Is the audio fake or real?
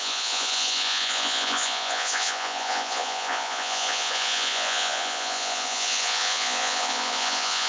fake